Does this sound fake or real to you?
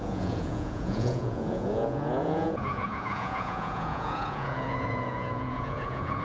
fake